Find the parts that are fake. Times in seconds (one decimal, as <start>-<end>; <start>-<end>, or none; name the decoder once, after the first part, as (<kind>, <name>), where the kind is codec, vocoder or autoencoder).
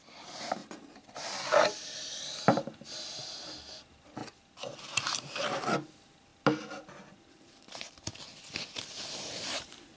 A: none